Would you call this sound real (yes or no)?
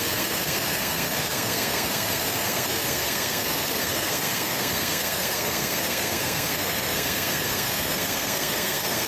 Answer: no